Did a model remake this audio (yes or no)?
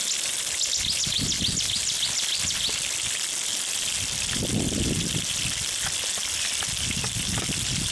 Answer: no